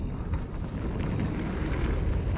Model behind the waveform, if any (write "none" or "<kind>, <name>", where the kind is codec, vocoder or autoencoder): none